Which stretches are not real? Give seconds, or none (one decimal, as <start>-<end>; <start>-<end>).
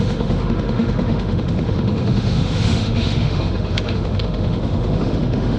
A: 0.0-5.6